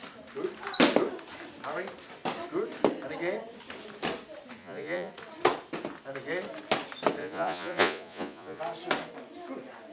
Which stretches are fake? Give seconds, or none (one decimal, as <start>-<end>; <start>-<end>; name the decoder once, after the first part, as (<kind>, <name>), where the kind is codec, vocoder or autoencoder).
4.6-5.1 (vocoder, Vocos); 7.2-8.6